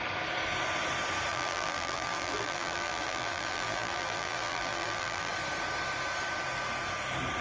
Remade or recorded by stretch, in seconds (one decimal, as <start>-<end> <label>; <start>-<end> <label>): 0.0-1.3 recorded; 1.3-5.3 remade; 5.3-7.4 recorded